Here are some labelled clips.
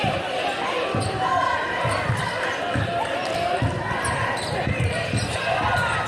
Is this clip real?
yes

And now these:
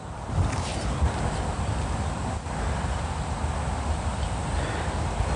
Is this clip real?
yes